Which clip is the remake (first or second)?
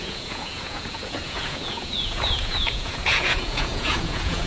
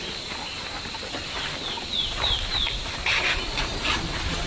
first